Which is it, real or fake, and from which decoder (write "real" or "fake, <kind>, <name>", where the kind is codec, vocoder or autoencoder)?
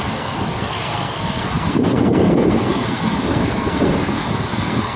fake, codec, SNAC